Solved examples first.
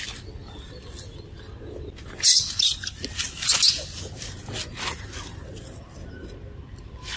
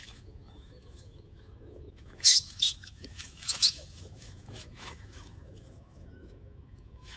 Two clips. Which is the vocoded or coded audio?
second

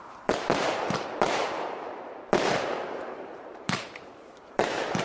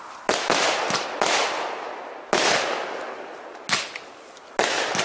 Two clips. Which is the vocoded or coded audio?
first